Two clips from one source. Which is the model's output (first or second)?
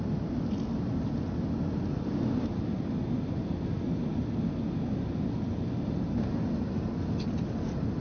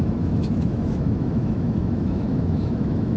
second